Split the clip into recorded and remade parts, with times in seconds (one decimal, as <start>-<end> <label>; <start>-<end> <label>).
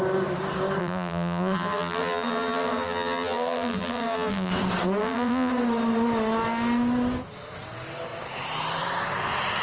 0.0-0.8 recorded; 0.8-4.5 remade; 4.5-5.0 recorded; 5.0-5.5 remade; 5.5-9.6 recorded